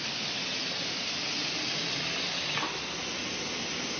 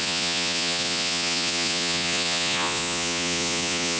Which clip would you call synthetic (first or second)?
second